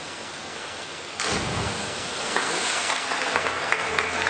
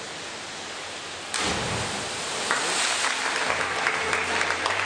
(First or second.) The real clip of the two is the second